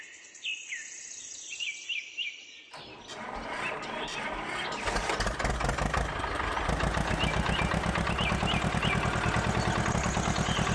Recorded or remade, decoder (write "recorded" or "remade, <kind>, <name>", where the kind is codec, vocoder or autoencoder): recorded